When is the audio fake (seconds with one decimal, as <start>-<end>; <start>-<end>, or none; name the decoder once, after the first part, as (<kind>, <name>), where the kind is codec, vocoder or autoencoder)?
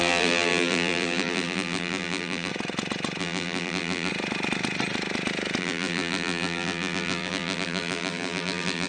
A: 0.0-2.5 (vocoder, BigVGAN v2); 3.2-4.1; 5.6-8.9